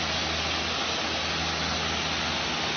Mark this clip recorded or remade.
recorded